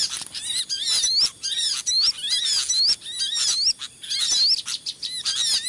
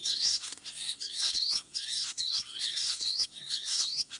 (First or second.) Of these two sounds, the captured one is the first